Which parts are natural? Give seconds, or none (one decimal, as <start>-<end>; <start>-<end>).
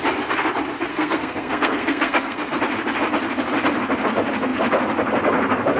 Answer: 0.0-0.9; 2.6-5.8